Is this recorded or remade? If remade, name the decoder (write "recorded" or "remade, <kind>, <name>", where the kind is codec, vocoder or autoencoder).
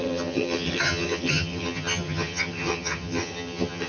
remade, vocoder, HiFi-GAN